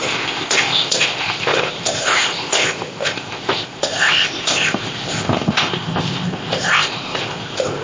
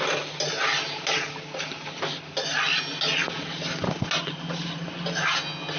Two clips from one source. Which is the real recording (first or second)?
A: second